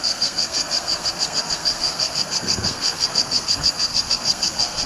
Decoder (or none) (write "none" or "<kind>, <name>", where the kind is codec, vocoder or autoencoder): codec, SNAC